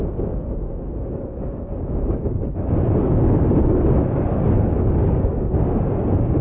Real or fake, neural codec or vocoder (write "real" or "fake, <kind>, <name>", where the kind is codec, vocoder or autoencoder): fake, codec, DAC